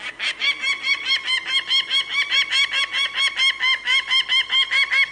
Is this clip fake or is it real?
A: real